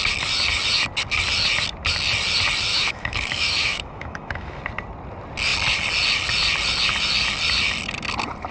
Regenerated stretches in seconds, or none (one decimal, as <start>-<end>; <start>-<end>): 2.7-4.6